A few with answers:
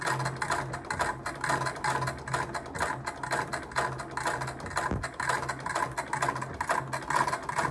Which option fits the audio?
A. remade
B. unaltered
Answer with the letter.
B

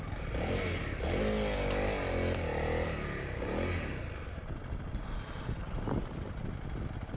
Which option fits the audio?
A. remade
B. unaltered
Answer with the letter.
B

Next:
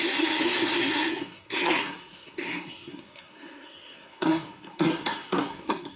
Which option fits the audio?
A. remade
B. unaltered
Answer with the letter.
A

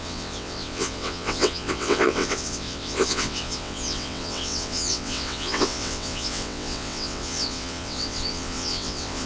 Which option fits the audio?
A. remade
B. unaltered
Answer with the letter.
A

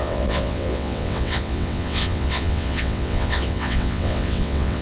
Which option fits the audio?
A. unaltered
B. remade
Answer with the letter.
B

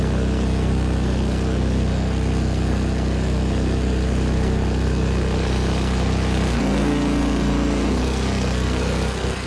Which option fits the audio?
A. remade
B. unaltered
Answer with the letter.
A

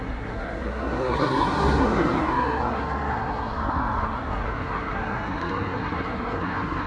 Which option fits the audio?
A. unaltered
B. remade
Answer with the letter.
B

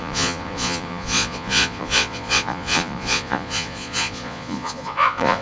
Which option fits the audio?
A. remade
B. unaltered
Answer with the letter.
A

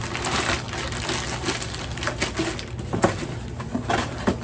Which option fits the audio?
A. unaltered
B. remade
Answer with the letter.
A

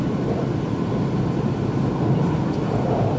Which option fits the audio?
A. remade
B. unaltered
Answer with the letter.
B